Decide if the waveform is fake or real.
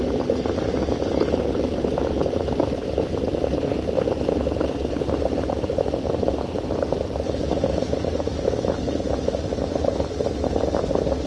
real